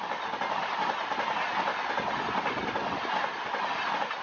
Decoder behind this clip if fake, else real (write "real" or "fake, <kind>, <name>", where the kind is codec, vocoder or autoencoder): real